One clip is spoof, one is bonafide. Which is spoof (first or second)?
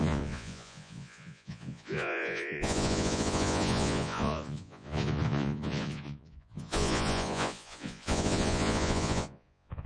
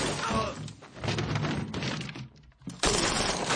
first